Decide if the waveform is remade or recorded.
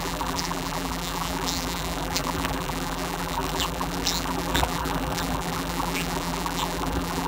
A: remade